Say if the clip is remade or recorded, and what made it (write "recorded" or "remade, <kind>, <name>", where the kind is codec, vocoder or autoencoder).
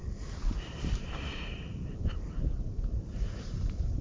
remade, vocoder, BigVGAN v2